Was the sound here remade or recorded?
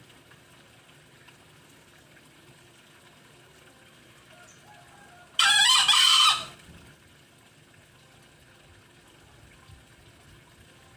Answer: recorded